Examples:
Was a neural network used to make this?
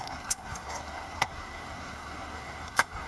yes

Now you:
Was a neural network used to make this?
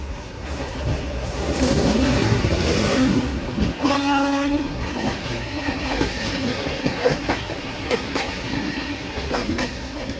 yes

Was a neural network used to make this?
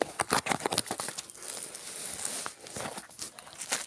no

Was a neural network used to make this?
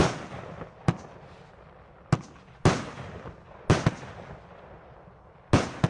no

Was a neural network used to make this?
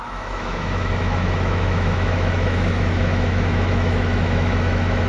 yes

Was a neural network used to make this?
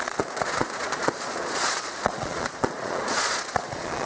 yes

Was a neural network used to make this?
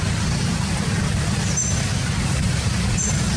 no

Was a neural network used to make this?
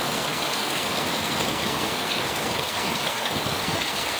yes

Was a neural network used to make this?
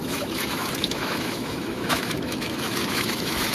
yes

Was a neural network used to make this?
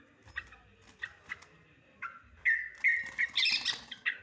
no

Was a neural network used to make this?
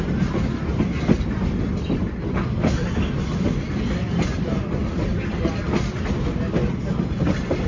no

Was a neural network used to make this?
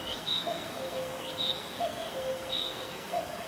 yes